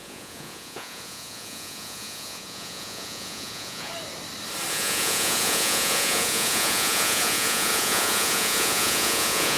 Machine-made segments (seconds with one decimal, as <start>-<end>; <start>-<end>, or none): 0.0-3.9; 4.7-9.6